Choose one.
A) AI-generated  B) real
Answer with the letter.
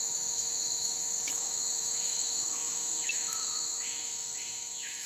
A